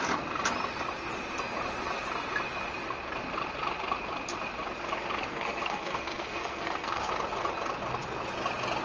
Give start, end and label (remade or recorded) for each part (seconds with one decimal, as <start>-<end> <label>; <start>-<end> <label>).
0.0-5.3 recorded; 5.3-7.1 remade; 7.1-8.8 recorded